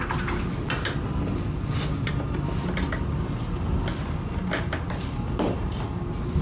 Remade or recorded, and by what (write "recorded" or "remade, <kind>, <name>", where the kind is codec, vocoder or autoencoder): recorded